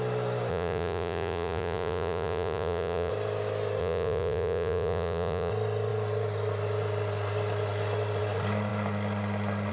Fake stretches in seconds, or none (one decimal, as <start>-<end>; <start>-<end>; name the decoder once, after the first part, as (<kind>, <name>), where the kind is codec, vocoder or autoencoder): 0.5-3.1 (vocoder, Vocos); 3.8-5.5